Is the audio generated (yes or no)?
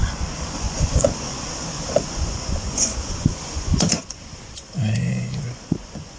yes